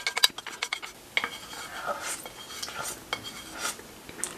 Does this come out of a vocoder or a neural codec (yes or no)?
no